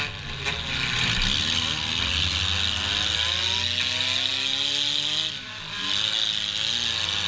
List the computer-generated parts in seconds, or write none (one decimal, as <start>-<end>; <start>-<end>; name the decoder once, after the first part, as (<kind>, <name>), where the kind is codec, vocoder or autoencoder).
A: none